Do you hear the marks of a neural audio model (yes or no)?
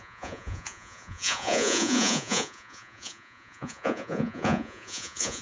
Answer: yes